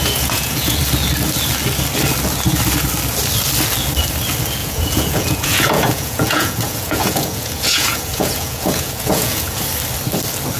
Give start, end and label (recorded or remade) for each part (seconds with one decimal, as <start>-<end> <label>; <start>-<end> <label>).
0.0-0.8 remade; 0.8-4.6 recorded; 4.6-9.6 remade; 9.6-10.6 recorded